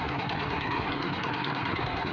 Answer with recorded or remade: remade